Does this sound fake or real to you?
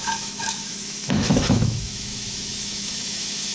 fake